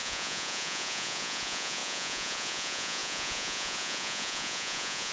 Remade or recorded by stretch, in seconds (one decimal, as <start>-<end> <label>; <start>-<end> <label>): 0.0-5.1 remade